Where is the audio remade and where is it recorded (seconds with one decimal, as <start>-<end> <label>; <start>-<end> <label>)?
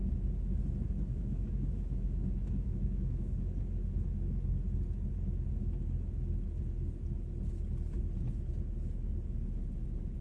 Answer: 0.0-1.1 recorded; 1.1-3.2 remade; 3.2-10.2 recorded